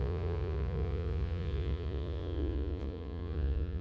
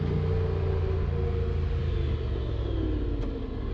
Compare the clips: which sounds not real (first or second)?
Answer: first